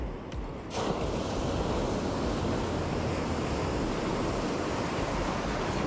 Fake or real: real